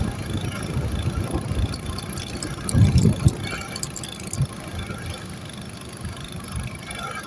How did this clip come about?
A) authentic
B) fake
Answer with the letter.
A